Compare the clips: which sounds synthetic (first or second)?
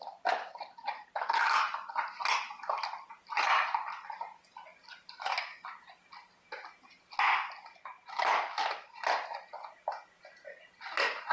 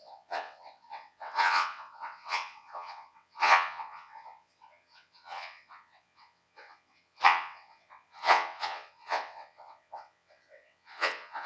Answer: second